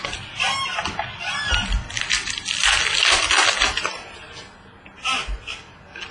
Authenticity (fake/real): real